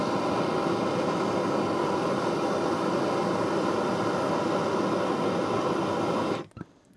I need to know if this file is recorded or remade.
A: recorded